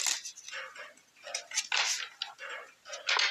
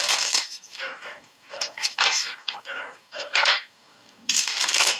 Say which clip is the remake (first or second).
second